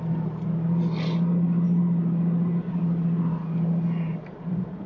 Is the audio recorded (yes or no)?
yes